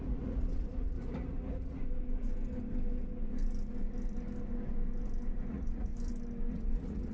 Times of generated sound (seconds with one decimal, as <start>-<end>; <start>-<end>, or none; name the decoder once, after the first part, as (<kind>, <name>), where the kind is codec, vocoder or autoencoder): 0.0-1.8 (vocoder, Vocos); 5.5-5.9; 6.5-7.1